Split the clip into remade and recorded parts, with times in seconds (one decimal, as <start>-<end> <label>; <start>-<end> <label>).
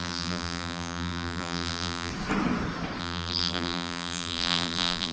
0.0-2.1 remade; 2.1-3.0 recorded; 3.0-5.1 remade